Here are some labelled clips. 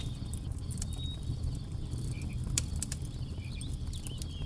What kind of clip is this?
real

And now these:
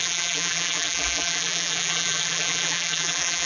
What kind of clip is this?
fake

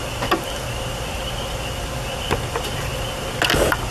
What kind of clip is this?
real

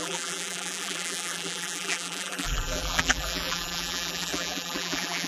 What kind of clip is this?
fake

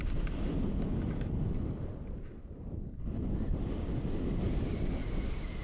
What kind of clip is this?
fake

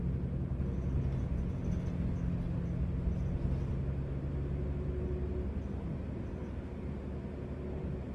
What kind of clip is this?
real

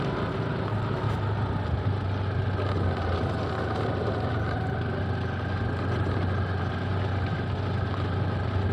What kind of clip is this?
real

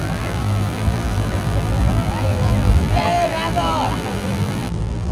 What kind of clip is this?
fake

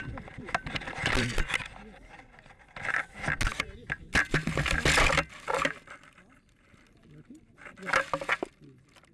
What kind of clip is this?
real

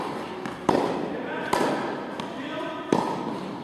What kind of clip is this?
real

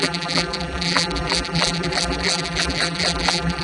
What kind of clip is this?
fake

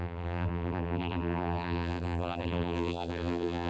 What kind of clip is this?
fake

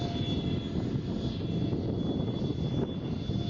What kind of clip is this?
real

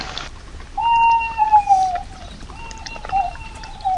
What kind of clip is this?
real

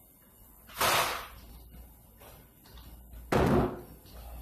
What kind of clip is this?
real